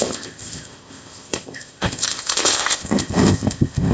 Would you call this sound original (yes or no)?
no